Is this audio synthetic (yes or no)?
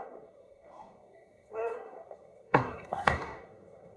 yes